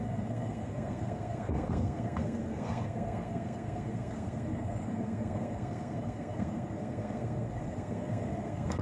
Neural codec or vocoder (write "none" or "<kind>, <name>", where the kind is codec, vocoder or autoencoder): codec, SNAC